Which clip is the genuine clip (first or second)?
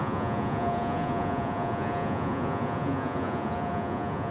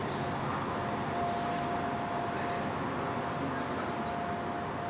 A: second